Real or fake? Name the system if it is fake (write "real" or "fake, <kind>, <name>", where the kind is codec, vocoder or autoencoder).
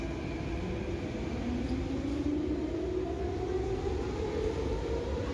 real